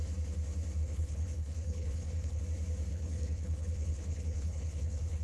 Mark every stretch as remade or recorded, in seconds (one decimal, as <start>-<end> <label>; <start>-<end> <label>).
0.0-0.8 recorded; 0.8-2.4 remade; 2.4-2.9 recorded; 2.9-5.2 remade